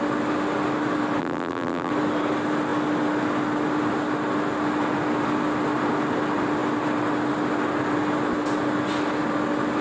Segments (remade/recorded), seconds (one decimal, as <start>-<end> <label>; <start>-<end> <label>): 0.0-1.2 recorded; 1.2-1.9 remade; 1.9-9.8 recorded